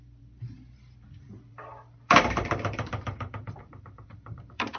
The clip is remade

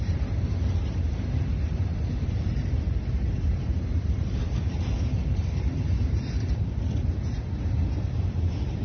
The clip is remade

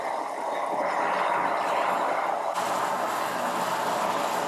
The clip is recorded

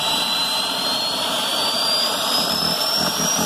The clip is remade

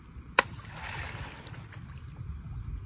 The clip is recorded